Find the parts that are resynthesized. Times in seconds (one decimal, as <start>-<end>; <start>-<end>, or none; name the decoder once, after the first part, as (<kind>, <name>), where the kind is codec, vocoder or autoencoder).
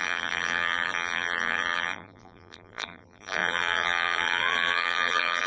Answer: 0.0-5.5 (vocoder, BigVGAN v2)